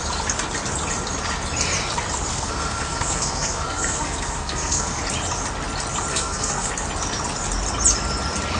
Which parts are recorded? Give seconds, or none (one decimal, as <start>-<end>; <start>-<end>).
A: 0.0-2.3; 5.0-6.1; 6.7-8.6